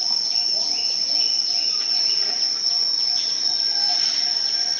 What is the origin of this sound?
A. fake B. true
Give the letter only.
B